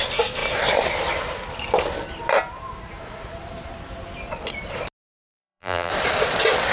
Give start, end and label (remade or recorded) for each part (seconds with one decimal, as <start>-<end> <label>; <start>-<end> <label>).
0.0-5.2 recorded; 5.2-5.9 remade; 5.9-6.7 recorded